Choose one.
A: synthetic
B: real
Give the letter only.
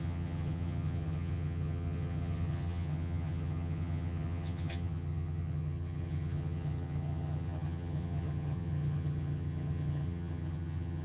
A